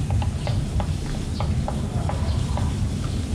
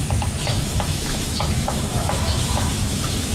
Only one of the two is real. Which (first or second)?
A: first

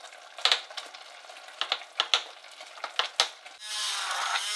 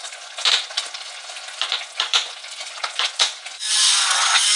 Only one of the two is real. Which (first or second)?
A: first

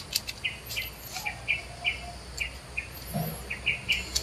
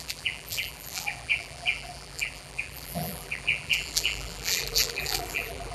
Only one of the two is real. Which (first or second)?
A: first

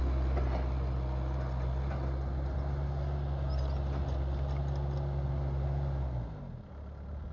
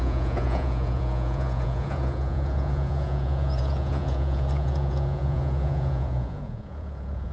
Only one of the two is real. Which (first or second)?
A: first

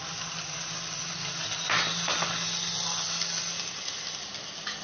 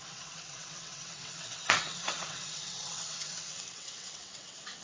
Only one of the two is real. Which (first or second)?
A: first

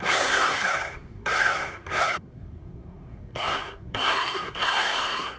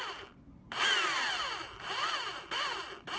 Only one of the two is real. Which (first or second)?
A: second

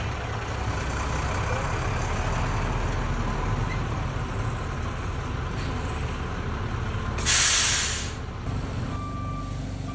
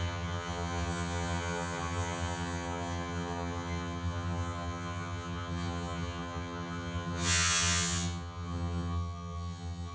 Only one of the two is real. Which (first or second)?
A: first